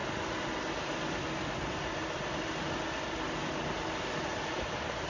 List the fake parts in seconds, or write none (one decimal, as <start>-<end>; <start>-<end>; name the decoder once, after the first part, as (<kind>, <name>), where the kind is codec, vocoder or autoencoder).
none